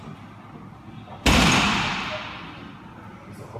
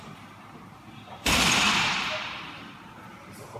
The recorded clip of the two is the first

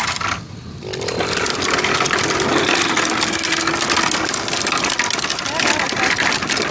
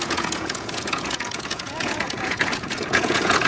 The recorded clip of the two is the first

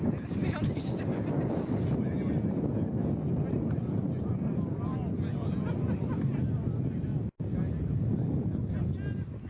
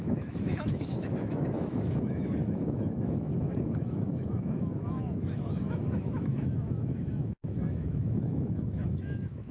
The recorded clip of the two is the first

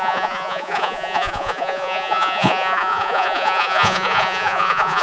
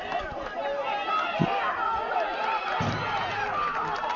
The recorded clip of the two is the second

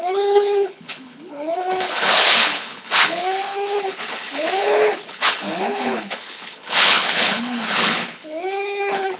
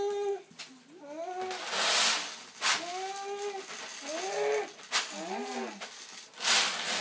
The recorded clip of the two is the second